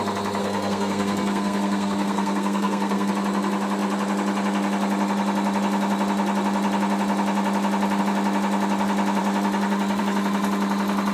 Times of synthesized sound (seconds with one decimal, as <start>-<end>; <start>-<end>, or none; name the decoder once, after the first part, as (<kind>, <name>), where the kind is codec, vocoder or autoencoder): 0.4-3.1 (codec, SNAC)